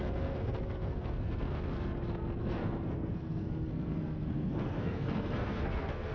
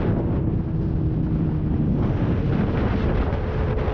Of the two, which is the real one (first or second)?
second